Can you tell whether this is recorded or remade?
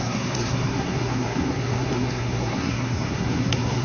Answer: remade